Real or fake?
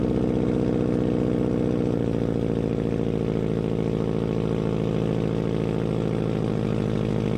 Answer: real